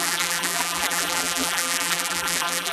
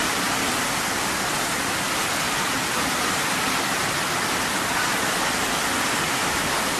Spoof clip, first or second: first